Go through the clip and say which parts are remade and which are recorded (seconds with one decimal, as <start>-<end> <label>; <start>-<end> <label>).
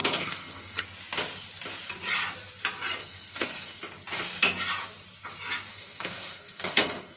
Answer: 0.0-0.8 remade; 0.8-3.0 recorded; 3.0-3.8 remade; 3.8-5.7 recorded; 5.7-7.2 remade